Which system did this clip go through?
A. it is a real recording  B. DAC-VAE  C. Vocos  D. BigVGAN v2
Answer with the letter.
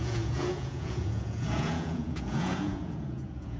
C